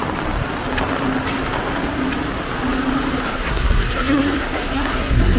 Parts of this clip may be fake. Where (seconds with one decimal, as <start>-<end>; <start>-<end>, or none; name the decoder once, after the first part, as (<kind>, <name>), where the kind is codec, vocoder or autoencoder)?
3.2-5.4 (codec, SNAC)